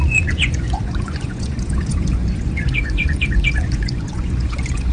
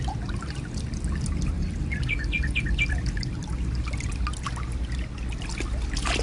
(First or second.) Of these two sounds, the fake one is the first